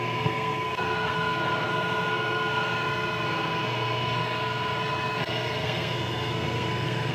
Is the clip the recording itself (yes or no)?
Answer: no